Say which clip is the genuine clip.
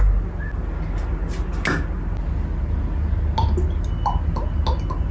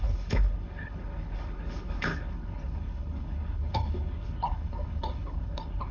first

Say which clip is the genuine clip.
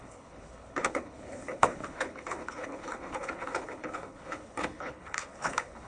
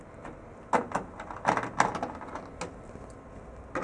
second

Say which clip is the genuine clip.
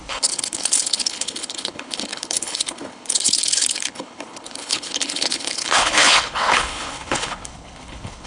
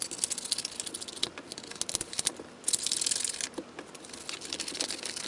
second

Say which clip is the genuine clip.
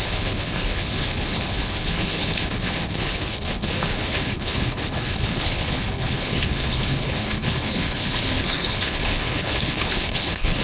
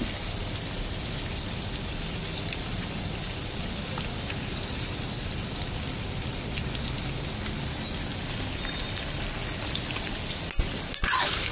second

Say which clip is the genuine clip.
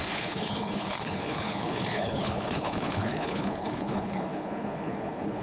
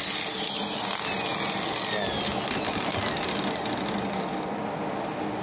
second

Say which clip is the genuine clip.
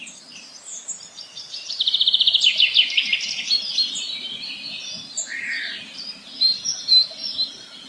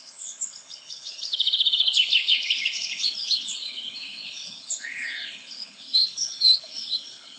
first